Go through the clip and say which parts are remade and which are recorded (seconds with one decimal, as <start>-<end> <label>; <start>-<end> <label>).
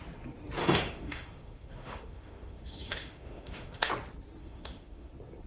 0.0-0.6 recorded; 0.6-3.9 remade; 3.9-4.4 recorded; 4.4-5.1 remade; 5.1-5.5 recorded